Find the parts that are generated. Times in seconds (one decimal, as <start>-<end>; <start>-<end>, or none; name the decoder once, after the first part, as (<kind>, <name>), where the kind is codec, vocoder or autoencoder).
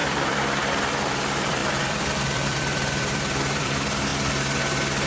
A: 0.0-4.1 (vocoder, BigVGAN v2)